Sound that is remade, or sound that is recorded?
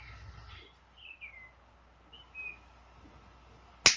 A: recorded